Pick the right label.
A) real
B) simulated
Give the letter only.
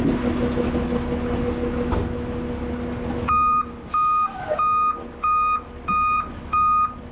A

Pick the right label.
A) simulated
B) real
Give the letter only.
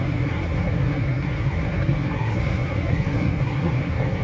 A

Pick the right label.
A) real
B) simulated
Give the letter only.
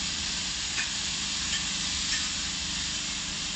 B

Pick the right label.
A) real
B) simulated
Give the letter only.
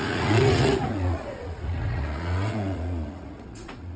B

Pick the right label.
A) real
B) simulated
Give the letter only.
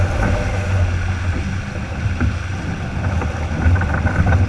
A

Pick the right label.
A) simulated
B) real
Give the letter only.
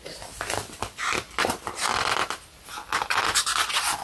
B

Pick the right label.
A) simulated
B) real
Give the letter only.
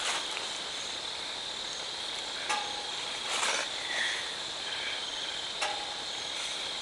B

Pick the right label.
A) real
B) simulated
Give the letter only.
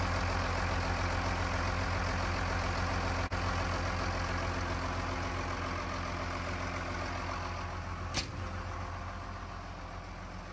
A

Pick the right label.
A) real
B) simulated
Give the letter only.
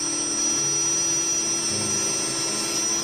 A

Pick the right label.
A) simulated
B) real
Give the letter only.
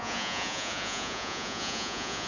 A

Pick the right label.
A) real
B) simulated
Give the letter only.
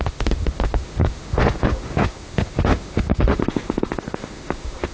B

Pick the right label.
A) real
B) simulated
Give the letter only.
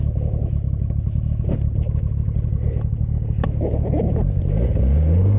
A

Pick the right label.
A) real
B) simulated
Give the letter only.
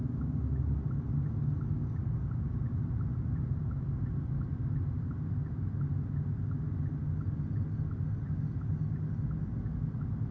A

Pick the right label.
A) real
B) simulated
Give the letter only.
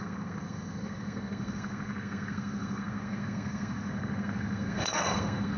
B